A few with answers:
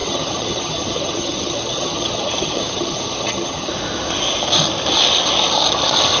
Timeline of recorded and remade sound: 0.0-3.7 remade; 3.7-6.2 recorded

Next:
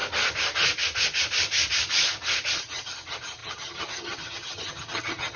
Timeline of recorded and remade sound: 0.0-2.6 recorded; 2.6-5.4 remade

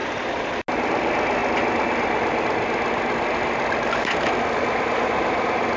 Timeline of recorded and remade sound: 0.0-5.8 recorded

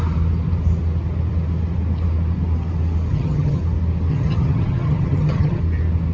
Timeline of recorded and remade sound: 0.0-3.1 recorded; 3.1-3.6 remade; 3.6-4.1 recorded; 4.1-5.6 remade; 5.6-6.1 recorded